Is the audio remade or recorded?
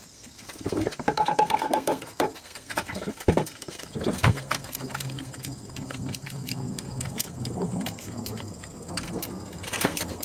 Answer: remade